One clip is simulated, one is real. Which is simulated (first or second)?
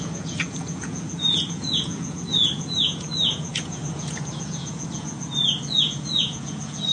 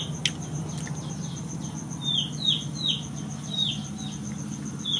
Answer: first